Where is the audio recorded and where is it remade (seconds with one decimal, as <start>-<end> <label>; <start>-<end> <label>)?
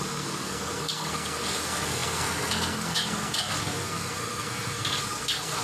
0.0-5.6 remade